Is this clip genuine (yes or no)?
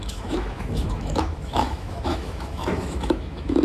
no